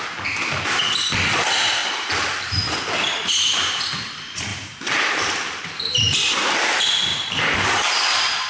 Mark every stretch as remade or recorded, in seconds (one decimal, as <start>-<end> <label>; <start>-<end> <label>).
0.0-1.8 recorded; 1.8-2.8 remade; 2.8-4.5 recorded; 4.5-5.8 remade; 5.8-7.1 recorded; 7.1-8.5 remade